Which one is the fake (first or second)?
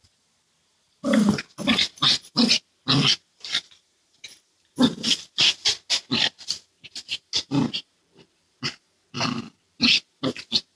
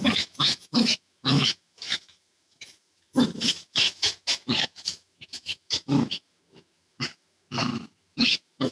second